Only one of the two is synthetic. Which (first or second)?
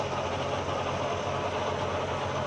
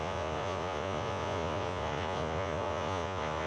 second